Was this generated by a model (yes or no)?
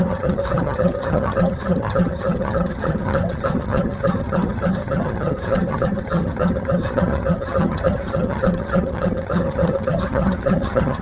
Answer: yes